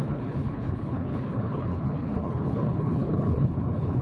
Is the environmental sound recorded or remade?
remade